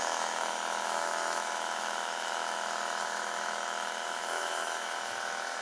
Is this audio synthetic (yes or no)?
yes